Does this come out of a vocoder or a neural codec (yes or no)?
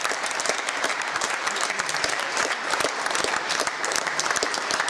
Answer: yes